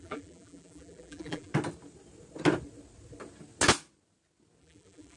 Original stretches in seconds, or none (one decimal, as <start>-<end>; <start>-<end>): 1.5-4.6